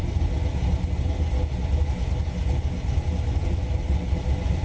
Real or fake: real